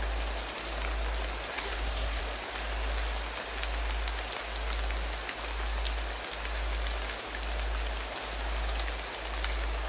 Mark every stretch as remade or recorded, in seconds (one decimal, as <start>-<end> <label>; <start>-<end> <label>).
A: 0.0-1.5 recorded; 1.5-2.2 remade; 2.2-9.9 recorded